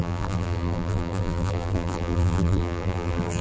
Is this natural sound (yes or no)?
no